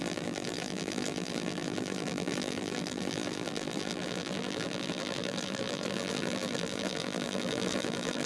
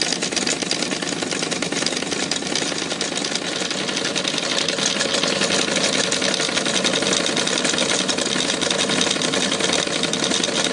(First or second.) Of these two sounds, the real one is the second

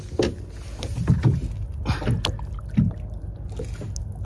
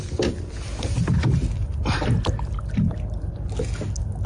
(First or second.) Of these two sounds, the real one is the first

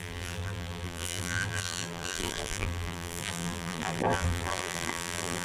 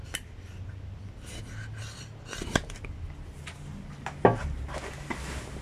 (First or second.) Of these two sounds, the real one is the second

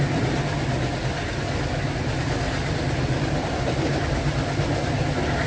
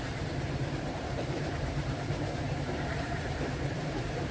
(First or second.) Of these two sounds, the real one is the first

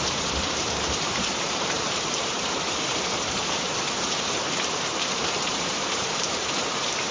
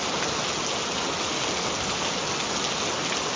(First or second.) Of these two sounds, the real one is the second